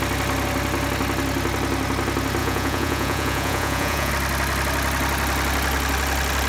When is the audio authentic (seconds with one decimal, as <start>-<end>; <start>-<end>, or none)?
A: 0.0-2.4; 4.1-6.5